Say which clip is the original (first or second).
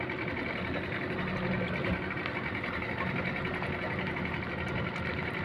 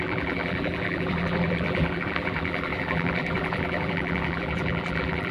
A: first